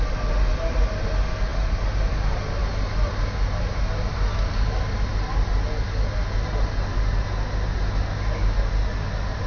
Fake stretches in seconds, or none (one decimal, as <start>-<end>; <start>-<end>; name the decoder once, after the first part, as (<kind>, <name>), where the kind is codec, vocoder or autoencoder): none